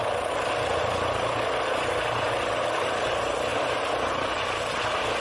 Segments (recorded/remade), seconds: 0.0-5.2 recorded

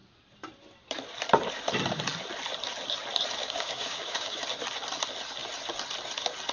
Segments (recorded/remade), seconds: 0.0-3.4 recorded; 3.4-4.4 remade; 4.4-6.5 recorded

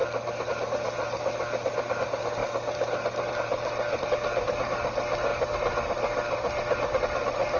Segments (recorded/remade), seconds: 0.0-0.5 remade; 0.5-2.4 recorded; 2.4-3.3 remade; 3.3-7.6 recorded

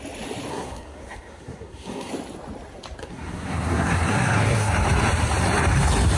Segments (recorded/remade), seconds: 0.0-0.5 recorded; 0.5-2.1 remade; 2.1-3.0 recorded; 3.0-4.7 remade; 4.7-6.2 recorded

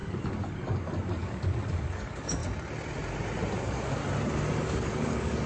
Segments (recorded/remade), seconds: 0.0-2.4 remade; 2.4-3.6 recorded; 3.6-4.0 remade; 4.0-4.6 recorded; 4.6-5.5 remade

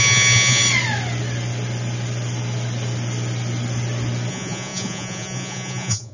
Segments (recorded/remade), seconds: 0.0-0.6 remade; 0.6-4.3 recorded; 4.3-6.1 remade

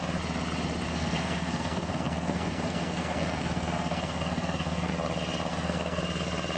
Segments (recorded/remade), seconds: 0.0-0.9 recorded; 0.9-4.9 remade; 4.9-5.5 recorded; 5.5-6.0 remade; 6.0-6.6 recorded

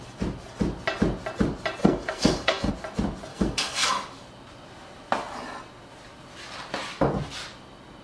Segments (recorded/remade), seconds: 0.0-1.8 recorded; 1.8-2.7 remade; 2.7-3.3 recorded; 3.3-3.9 remade; 3.9-8.0 recorded